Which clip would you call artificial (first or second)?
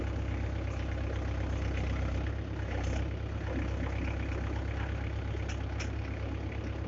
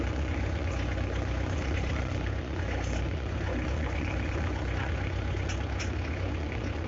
second